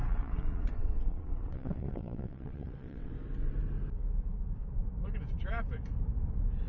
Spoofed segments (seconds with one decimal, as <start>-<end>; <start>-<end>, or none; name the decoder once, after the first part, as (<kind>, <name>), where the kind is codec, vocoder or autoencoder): 0.0-3.1 (vocoder, WaveNeXt)

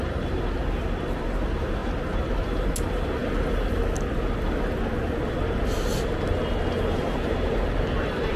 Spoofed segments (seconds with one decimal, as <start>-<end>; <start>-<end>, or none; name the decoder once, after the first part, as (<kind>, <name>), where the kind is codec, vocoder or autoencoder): none

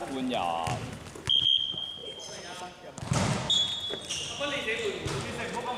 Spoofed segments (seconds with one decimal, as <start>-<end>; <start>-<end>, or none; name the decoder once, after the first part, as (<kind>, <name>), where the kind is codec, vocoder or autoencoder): 2.0-3.0 (vocoder, BigVGAN v2)

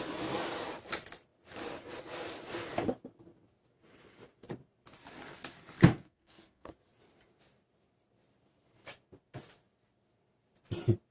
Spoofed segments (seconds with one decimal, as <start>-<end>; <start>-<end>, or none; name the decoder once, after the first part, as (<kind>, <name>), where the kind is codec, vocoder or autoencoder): 5.9-6.7 (codec, SNAC)